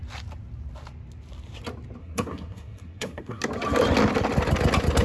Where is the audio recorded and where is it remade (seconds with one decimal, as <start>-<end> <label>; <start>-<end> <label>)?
0.0-2.0 recorded; 2.0-3.4 remade; 3.4-5.0 recorded